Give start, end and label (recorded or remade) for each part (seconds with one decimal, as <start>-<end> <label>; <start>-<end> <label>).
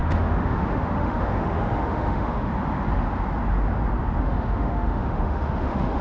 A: 0.0-2.5 remade; 2.5-4.2 recorded; 4.2-6.0 remade